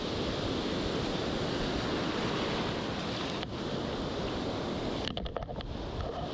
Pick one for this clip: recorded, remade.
recorded